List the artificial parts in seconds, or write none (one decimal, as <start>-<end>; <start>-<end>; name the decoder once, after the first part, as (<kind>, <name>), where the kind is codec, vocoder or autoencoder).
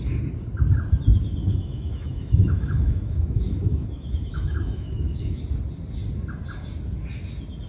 1.4-5.4 (autoencoder, DAC-VAE)